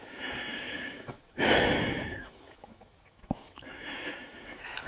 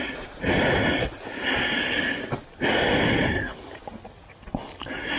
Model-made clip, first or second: first